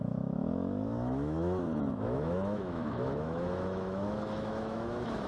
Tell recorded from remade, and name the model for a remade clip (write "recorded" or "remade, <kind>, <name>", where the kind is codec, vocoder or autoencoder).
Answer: remade, autoencoder, DAC-VAE